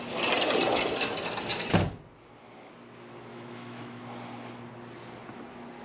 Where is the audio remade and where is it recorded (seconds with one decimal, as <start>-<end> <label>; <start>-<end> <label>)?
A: 0.0-3.3 recorded; 3.3-4.0 remade; 4.0-5.8 recorded